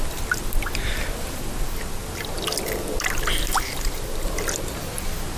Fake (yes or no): no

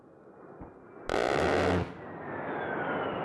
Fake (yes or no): no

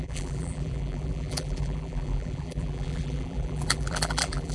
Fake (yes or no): yes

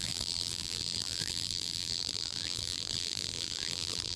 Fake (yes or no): yes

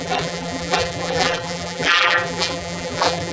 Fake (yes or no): yes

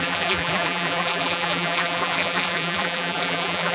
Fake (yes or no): yes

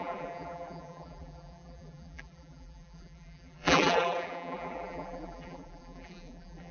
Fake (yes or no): yes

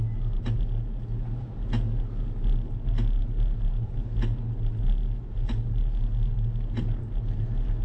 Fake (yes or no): no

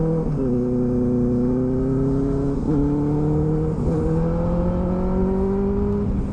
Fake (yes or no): no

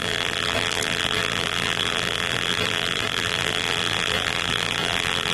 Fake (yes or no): yes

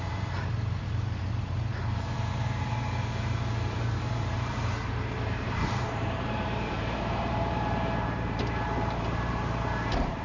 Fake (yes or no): yes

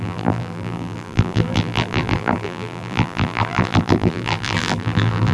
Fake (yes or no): yes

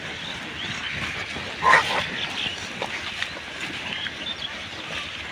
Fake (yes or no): yes